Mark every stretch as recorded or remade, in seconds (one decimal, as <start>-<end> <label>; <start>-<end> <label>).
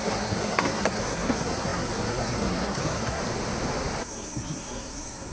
0.0-3.2 remade; 3.2-4.0 recorded; 4.0-5.3 remade